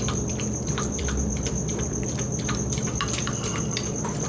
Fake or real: fake